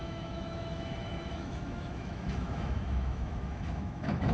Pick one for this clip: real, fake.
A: fake